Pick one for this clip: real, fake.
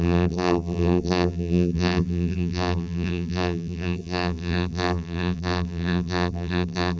fake